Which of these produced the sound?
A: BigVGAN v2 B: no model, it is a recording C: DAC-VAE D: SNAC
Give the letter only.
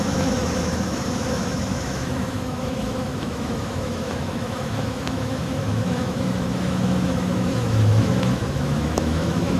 C